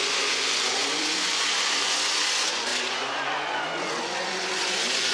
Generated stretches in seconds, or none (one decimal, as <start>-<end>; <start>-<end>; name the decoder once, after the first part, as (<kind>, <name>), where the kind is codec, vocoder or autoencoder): 0.0-5.1 (vocoder, Vocos)